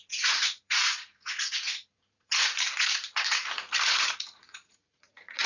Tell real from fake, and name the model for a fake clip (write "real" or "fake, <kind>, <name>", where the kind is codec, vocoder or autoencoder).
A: fake, vocoder, Vocos